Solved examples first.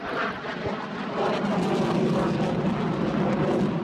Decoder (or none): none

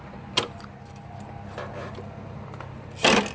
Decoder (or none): vocoder, BigVGAN v2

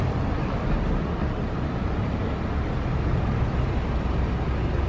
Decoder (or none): none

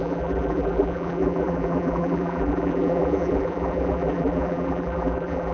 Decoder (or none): vocoder, BigVGAN v2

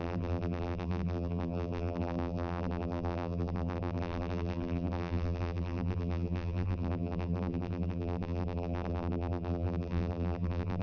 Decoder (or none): vocoder, BigVGAN v2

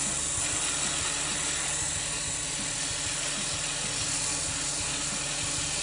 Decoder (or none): none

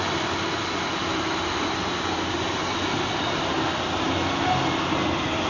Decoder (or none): none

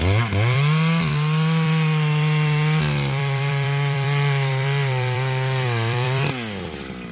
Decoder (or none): vocoder, BigVGAN v2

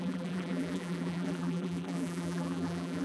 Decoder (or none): vocoder, BigVGAN v2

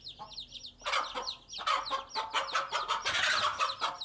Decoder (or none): none